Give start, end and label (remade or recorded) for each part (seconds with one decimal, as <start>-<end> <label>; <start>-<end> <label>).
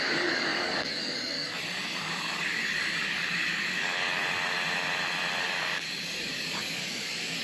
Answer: 0.0-4.2 remade; 4.2-5.4 recorded; 5.4-7.4 remade